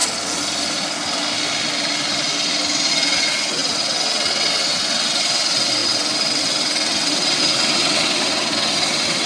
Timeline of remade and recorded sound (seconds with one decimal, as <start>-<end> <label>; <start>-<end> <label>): 0.0-2.9 recorded; 2.9-9.3 remade

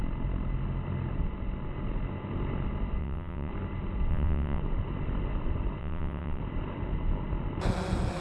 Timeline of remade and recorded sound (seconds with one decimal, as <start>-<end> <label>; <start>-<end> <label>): 0.0-3.0 recorded; 3.0-3.5 remade; 3.5-4.1 recorded; 4.1-4.6 remade; 4.6-5.8 recorded; 5.8-6.4 remade; 6.4-8.2 recorded